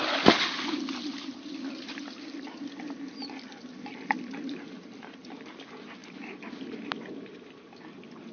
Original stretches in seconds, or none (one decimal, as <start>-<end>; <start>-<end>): 0.0-8.3